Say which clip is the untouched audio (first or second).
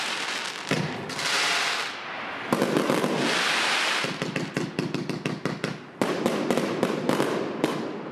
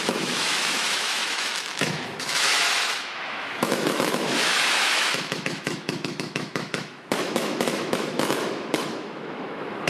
first